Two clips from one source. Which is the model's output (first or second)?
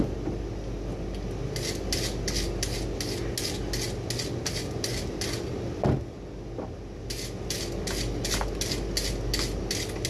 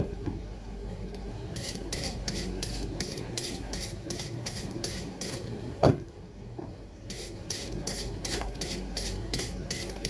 second